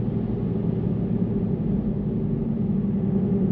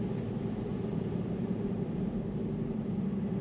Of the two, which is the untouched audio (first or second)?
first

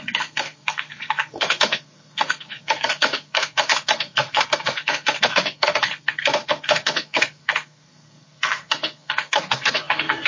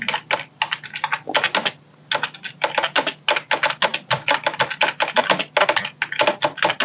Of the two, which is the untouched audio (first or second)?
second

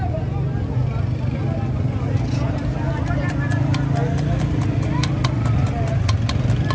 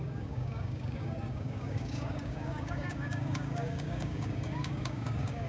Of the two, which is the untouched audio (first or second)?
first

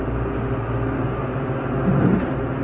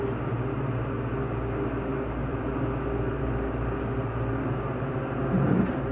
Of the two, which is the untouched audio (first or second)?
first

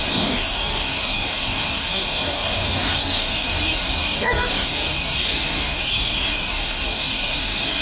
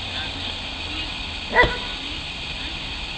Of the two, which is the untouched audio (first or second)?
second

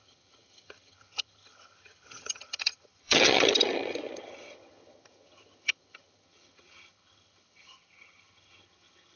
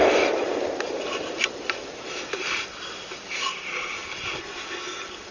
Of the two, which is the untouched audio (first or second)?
second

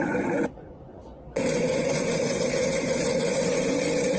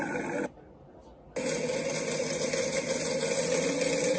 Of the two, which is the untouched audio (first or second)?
second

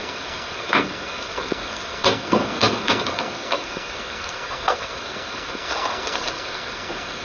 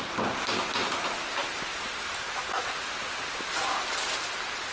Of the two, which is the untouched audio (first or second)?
second